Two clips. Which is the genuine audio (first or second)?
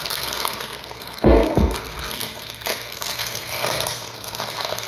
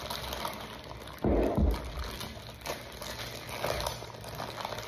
second